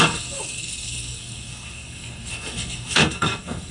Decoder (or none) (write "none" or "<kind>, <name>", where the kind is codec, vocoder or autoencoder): codec, SNAC